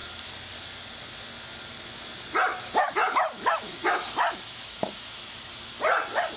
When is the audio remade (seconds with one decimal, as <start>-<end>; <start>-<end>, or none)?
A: 2.5-5.5

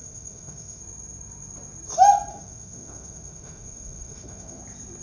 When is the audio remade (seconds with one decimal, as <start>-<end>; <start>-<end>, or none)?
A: 0.0-0.8; 2.3-4.6